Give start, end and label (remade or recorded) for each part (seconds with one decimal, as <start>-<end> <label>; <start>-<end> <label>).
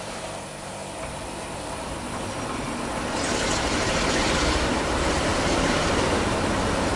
0.0-0.8 remade; 0.8-4.1 recorded; 4.1-7.0 remade